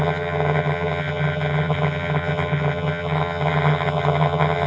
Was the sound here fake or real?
fake